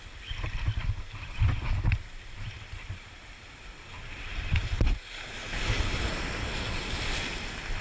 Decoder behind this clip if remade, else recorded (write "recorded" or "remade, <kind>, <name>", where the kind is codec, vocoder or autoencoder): recorded